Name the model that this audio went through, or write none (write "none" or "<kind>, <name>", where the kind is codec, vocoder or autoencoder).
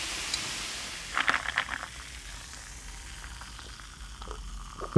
none